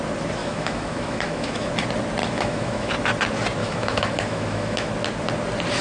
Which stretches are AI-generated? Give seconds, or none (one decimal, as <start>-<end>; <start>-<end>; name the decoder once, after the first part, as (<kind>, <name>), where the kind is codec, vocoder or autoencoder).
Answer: 0.4-1.7 (autoencoder, DAC-VAE); 2.2-2.9; 3.6-4.9